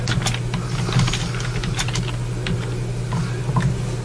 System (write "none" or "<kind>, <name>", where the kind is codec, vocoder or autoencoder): none